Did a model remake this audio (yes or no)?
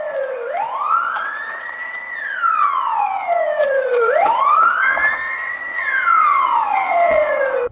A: yes